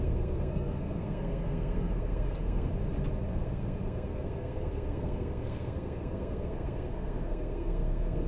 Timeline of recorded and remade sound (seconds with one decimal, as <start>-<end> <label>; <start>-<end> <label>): 0.0-2.7 remade; 2.7-3.3 recorded; 3.3-8.3 remade